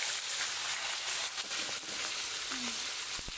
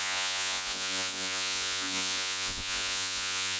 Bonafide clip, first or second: first